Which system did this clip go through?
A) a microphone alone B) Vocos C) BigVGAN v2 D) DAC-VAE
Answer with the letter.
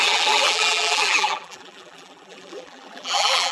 C